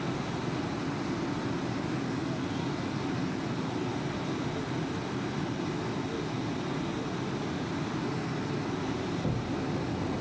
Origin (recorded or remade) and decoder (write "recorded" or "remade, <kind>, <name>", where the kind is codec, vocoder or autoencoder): recorded